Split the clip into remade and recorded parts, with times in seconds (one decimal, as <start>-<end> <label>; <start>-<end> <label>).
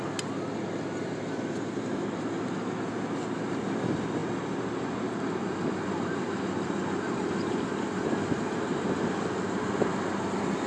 0.0-10.7 recorded